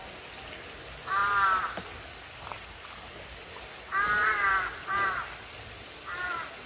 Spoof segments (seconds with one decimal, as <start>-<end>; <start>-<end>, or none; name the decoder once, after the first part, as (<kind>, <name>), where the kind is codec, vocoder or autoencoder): none